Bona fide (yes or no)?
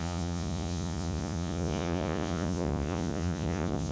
no